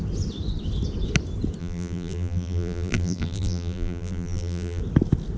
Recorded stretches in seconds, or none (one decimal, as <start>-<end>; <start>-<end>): 0.0-1.6; 4.8-5.4